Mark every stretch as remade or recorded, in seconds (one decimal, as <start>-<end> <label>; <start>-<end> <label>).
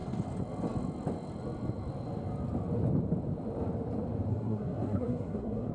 0.0-4.3 recorded; 4.3-5.7 remade